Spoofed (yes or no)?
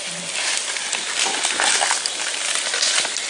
no